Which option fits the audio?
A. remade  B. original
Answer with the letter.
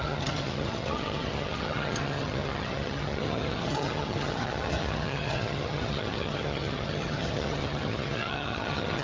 A